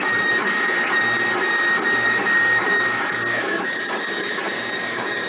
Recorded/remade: remade